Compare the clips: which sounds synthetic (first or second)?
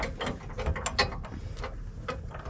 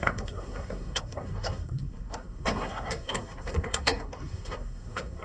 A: second